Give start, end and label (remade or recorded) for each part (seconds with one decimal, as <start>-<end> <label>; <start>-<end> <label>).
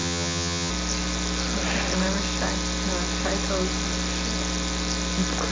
0.0-0.7 remade; 0.7-5.5 recorded